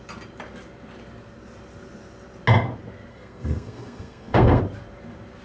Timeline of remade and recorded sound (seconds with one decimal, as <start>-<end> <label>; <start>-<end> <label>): 0.0-3.1 recorded; 3.1-4.6 remade; 4.6-5.4 recorded